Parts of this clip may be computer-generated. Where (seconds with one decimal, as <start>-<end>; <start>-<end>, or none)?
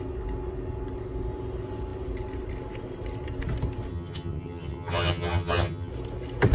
3.9-5.9